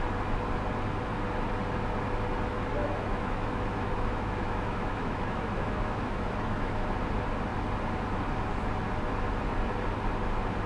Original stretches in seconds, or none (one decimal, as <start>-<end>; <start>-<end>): 0.0-2.8; 7.0-10.7